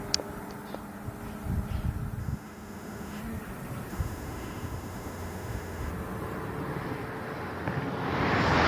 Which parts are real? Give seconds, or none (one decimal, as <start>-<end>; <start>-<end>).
0.0-2.2; 3.2-3.9; 5.9-8.7